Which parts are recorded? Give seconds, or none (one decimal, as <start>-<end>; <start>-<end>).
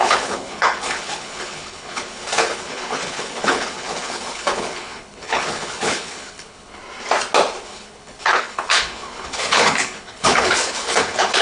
6.8-7.6